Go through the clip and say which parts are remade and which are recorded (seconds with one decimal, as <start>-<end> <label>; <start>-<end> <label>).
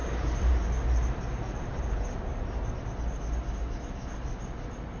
0.0-3.0 remade; 3.0-5.0 recorded